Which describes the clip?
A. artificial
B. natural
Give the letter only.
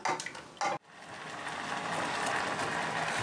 B